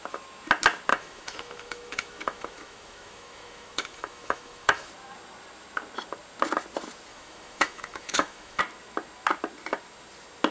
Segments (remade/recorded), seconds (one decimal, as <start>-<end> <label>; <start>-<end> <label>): 0.0-0.9 recorded; 0.9-4.9 remade; 4.9-7.1 recorded; 7.1-8.6 remade; 8.6-10.5 recorded